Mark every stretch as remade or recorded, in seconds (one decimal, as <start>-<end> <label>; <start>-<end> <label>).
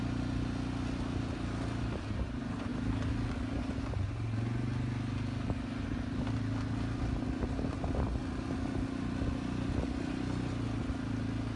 0.0-11.6 recorded